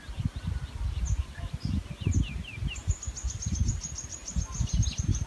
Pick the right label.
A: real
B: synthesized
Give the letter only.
A